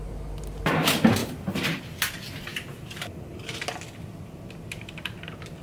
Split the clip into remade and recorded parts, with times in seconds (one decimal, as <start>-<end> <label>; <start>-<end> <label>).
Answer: 0.0-1.2 recorded; 1.2-1.8 remade; 1.8-2.5 recorded; 2.5-3.5 remade; 3.5-5.6 recorded